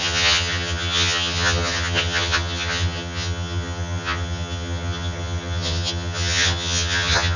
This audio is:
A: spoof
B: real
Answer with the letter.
A